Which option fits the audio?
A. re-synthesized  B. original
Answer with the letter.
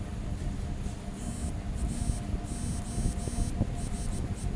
B